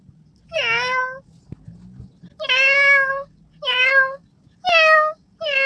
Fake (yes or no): no